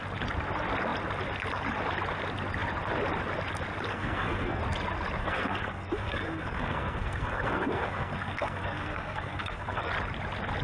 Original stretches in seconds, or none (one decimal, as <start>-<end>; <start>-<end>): 0.0-3.9; 4.6-5.2; 9.9-10.6